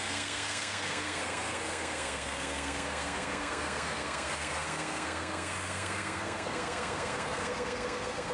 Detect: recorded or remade remade